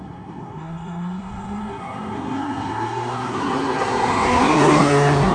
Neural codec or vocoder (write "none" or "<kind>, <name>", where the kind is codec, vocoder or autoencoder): codec, SNAC